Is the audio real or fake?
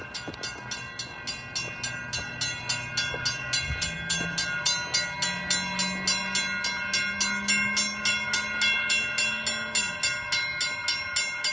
real